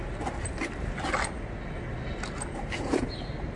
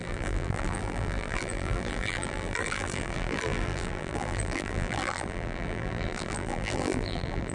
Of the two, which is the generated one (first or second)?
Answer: second